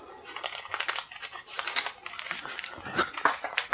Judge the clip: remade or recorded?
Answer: recorded